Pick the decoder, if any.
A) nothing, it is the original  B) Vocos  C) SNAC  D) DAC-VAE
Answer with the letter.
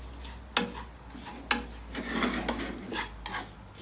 A